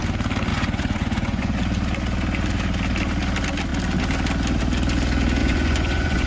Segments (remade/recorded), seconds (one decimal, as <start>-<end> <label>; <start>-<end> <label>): 0.0-0.5 recorded; 0.5-1.6 remade; 1.6-5.4 recorded; 5.4-6.3 remade